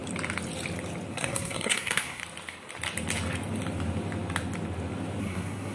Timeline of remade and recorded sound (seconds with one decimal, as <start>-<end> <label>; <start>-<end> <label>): 0.0-1.1 recorded; 1.1-2.2 remade; 2.2-5.2 recorded; 5.2-5.7 remade